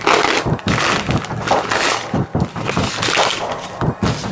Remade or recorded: recorded